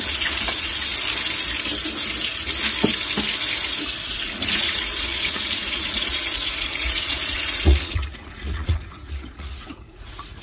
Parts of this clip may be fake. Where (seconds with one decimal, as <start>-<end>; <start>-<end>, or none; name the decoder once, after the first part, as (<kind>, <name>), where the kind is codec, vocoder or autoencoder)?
0.0-0.9 (vocoder, Vocos); 4.1-10.4